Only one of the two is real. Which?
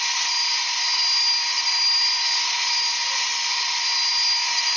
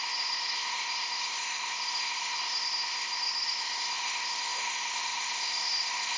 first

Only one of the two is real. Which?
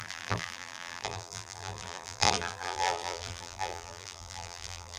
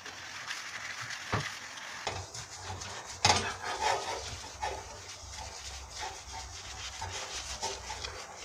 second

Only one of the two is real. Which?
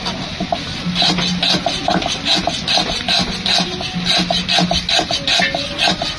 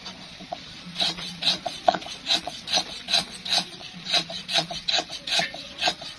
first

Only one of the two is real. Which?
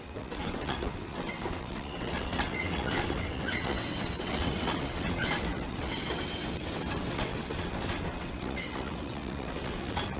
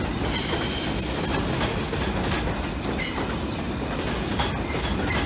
second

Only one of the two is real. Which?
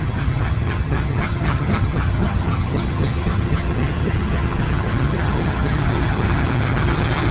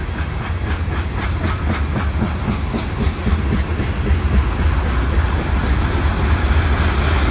second